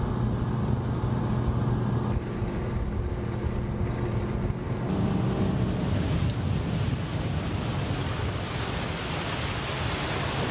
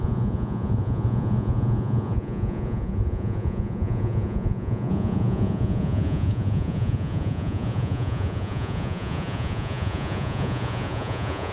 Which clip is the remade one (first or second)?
second